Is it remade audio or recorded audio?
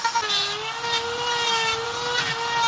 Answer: recorded